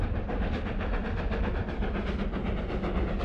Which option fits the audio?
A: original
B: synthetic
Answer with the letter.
A